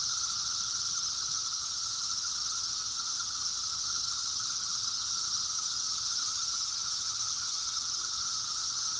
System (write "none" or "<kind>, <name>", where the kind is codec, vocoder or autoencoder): vocoder, HiFi-GAN